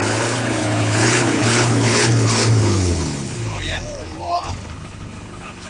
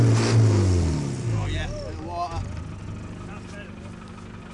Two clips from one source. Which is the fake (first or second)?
first